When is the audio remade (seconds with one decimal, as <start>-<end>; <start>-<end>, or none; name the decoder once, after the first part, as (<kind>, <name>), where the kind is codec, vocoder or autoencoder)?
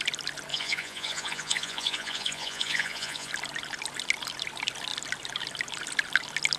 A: 0.5-3.3 (vocoder, Vocos)